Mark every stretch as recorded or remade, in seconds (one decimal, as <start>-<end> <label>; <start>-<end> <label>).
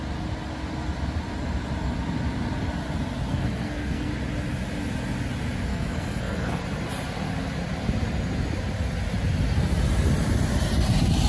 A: 0.0-3.3 recorded; 3.3-4.1 remade; 4.1-5.7 recorded; 5.7-6.6 remade; 6.6-11.3 recorded